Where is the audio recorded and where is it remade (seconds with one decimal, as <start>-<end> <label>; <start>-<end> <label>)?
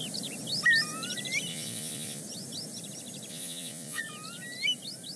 0.0-1.5 recorded; 1.5-2.2 remade; 2.2-3.3 recorded; 3.3-4.0 remade; 4.0-5.2 recorded